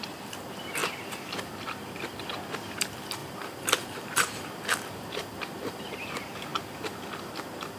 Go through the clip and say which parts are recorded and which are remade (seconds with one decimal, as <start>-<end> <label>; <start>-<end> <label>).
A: 0.0-0.8 recorded; 0.8-2.0 remade; 2.0-3.2 recorded; 3.2-5.9 remade; 5.9-7.8 recorded